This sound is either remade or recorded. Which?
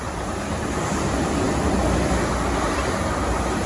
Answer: recorded